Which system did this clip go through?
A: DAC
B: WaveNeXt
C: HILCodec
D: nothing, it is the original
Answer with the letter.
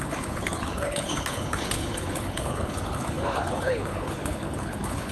C